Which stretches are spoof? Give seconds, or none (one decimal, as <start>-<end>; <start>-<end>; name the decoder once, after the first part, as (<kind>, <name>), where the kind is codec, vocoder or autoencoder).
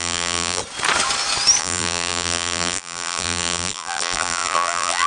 0.0-0.6 (vocoder, BigVGAN v2); 1.6-5.1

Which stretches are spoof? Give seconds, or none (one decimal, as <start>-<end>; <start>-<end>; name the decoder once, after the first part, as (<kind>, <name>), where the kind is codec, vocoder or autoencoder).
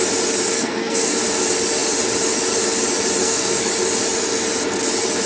0.5-1.2 (codec, SNAC); 3.2-3.7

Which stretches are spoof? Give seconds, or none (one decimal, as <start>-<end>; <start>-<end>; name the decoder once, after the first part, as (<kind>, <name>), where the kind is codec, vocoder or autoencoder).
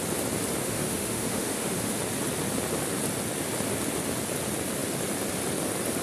0.6-2.0 (autoencoder, DAC-VAE)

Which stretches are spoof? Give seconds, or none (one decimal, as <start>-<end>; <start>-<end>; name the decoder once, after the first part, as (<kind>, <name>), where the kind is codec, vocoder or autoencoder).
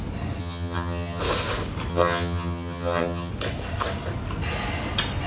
0.4-1.2 (vocoder, HiFi-GAN); 1.9-3.3